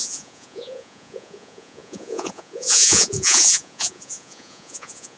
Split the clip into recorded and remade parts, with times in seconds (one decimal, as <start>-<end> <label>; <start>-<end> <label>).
0.0-5.2 remade